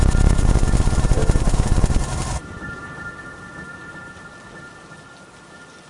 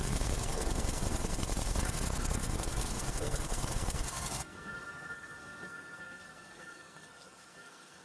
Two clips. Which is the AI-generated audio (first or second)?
second